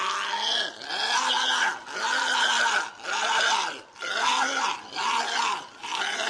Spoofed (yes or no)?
no